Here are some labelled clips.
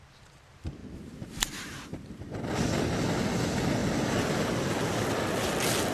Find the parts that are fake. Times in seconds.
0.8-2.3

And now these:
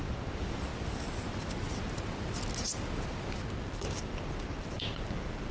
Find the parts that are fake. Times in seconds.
0.0-0.7; 3.8-5.5

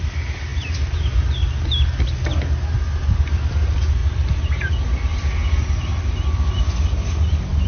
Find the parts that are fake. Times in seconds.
4.0-4.7